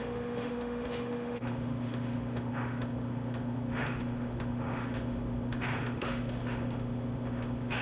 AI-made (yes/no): yes